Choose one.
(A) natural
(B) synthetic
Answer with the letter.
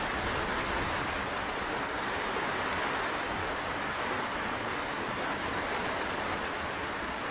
A